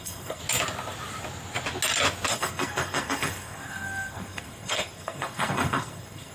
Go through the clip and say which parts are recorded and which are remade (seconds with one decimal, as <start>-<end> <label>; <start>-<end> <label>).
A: 0.0-0.4 remade; 0.4-2.3 recorded; 2.3-6.3 remade